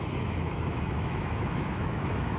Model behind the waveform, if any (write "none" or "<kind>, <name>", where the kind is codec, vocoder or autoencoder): autoencoder, DAC-VAE